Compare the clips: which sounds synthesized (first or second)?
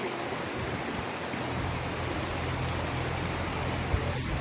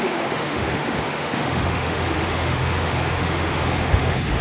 second